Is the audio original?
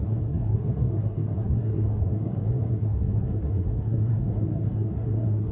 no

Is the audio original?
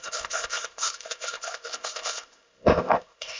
no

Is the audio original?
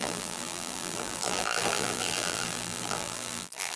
no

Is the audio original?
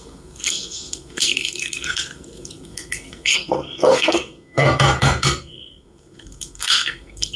no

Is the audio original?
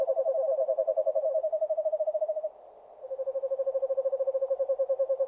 yes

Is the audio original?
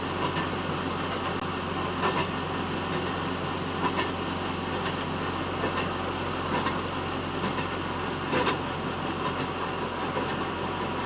yes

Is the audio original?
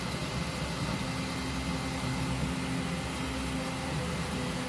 yes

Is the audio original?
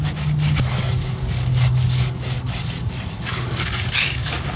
no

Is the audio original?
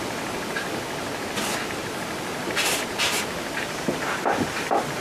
yes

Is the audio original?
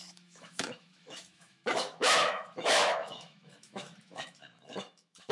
no